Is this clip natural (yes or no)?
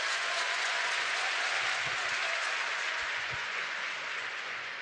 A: no